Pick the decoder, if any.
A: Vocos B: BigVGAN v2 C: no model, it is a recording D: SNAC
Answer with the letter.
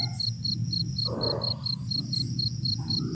C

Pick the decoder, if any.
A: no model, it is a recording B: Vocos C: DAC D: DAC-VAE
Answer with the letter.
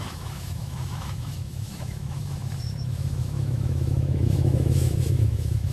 D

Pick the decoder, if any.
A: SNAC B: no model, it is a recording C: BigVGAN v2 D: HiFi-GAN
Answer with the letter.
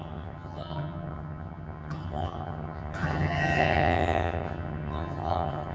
D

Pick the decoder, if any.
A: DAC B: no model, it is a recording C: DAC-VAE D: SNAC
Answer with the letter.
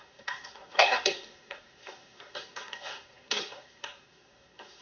D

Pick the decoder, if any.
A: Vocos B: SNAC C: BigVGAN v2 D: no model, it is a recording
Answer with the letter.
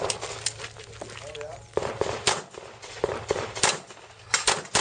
D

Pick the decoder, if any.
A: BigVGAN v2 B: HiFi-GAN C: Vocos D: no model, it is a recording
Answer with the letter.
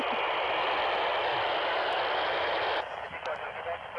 D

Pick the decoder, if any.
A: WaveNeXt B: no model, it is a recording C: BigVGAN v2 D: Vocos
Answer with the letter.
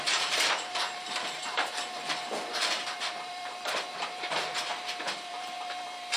C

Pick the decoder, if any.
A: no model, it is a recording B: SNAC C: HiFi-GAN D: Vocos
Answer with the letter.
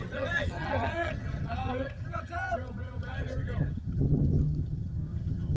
C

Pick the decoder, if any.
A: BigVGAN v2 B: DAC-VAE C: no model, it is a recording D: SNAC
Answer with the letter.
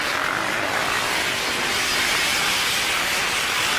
C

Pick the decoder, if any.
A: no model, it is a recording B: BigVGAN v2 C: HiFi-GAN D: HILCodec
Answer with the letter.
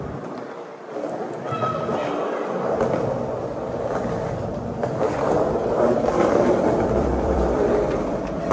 B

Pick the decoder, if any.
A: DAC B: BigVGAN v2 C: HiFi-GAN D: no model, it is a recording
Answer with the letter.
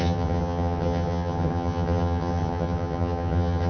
C